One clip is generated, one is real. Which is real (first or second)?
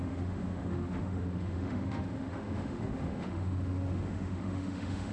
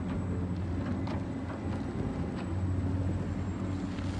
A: second